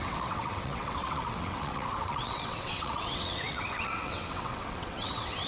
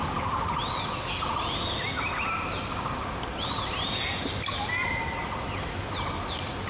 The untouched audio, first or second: second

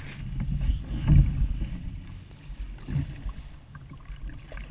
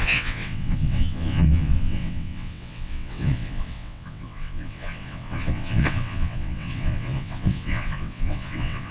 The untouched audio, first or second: first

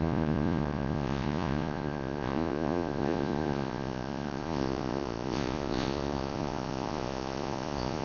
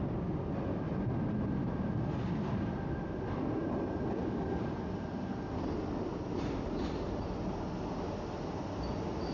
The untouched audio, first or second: second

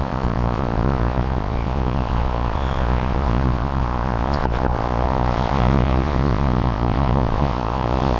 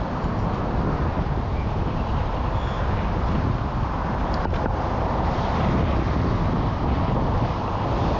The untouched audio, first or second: second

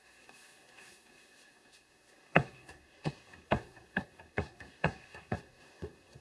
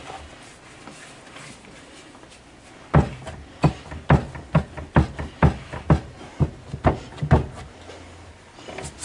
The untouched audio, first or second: second